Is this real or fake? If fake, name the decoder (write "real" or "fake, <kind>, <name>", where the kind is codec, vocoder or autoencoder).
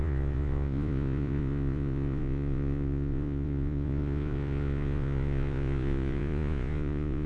fake, vocoder, Vocos